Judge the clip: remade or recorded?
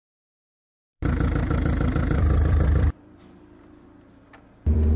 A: remade